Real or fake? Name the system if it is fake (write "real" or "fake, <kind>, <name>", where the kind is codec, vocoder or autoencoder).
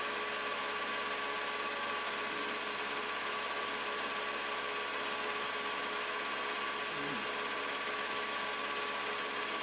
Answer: real